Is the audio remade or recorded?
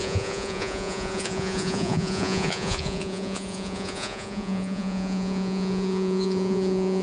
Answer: remade